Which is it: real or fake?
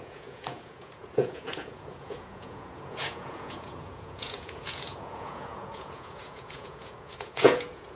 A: fake